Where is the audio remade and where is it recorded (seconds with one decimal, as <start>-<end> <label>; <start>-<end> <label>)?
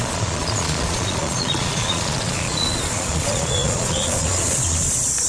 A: 0.0-5.3 remade